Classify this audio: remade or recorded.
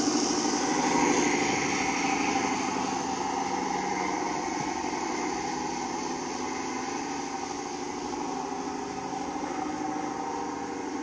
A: recorded